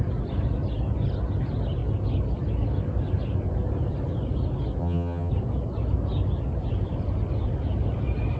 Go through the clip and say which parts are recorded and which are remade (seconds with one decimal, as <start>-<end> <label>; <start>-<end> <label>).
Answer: 0.0-4.8 recorded; 4.8-5.3 remade; 5.3-8.4 recorded